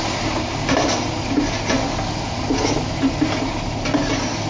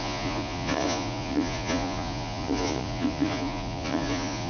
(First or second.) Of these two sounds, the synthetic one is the second